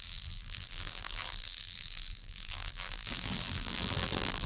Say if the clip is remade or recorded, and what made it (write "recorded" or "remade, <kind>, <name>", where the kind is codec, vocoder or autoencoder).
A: remade, vocoder, BigVGAN v2